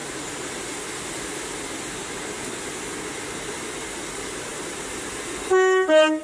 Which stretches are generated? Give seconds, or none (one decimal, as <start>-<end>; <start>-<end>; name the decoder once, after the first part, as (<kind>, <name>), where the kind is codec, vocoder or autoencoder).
none